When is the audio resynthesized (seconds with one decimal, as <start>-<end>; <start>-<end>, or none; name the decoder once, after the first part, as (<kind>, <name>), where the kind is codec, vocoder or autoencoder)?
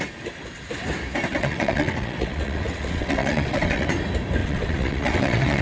1.3-3.9 (vocoder, WaveNeXt); 4.4-5.6